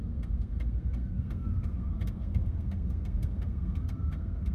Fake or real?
fake